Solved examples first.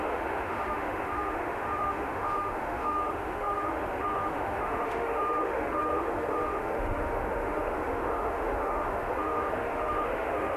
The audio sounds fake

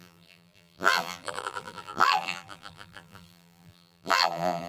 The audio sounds fake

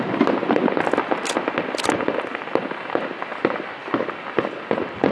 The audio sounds real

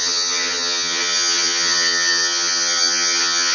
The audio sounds fake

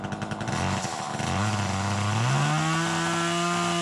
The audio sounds real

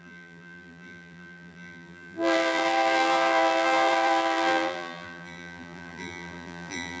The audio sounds fake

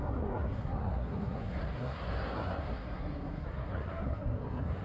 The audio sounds fake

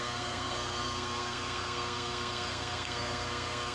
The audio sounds fake